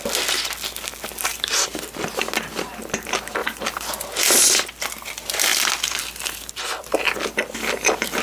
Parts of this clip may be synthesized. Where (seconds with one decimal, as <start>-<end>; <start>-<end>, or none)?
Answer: 3.4-4.3; 5.5-6.9